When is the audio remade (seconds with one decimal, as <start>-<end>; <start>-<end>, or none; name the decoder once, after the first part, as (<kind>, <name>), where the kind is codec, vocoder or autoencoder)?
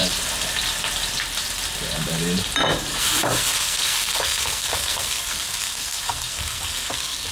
2.9-7.3 (codec, SNAC)